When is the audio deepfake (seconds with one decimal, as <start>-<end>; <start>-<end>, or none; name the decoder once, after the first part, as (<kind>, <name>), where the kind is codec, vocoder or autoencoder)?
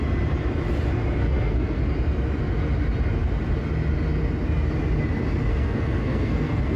1.2-1.8 (codec, SNAC); 5.5-6.8